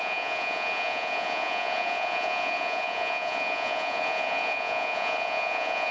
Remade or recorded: remade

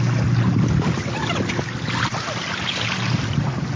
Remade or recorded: recorded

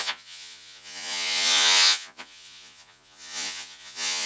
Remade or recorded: remade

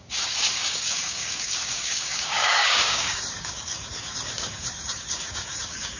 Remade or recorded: remade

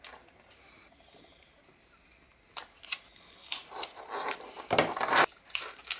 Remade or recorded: recorded